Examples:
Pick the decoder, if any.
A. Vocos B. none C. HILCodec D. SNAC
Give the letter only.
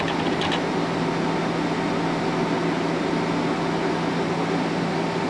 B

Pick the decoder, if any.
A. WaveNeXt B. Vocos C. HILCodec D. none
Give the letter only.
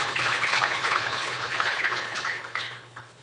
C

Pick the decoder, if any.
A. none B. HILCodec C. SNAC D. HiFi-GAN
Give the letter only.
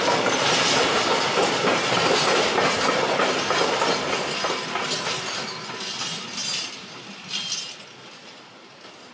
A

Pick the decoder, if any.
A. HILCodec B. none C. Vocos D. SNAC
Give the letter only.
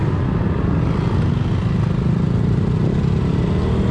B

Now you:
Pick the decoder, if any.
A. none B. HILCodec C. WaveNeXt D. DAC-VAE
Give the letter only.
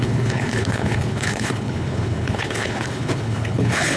B